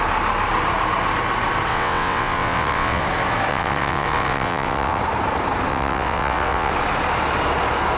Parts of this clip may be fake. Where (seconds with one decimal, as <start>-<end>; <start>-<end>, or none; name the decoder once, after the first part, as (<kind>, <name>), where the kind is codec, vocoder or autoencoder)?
1.7-3.0 (vocoder, WaveNeXt); 3.5-5.0; 5.7-6.7